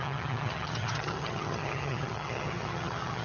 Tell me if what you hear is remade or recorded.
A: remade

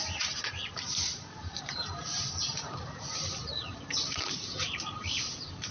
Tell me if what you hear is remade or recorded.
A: remade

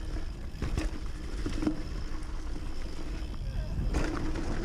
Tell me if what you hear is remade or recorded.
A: recorded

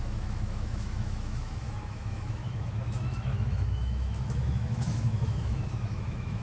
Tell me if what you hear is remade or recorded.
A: remade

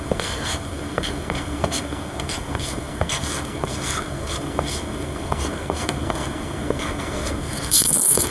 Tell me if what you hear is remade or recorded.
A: remade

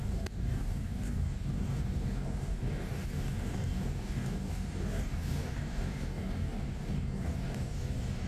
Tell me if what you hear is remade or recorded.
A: remade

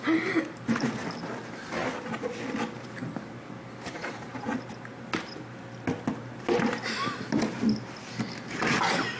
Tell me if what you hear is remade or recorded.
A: recorded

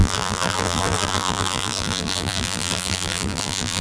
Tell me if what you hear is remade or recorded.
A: remade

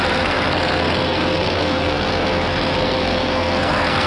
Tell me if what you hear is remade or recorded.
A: remade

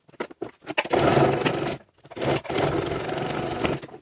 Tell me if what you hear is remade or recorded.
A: recorded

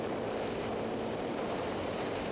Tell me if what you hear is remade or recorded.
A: remade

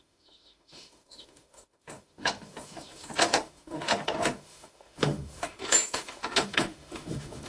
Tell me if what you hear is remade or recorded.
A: remade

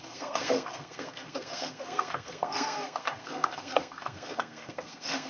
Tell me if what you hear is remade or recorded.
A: remade